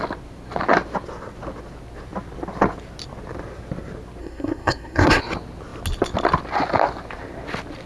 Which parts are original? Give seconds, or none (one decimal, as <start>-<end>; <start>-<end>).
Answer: 0.0-4.2; 5.2-7.9